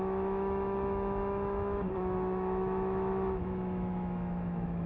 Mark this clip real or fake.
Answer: fake